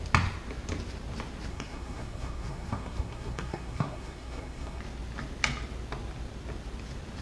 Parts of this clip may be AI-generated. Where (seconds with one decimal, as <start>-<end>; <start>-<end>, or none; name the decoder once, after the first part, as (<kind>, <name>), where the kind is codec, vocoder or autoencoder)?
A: 1.5-4.8 (codec, SNAC)